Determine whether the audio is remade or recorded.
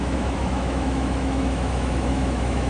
remade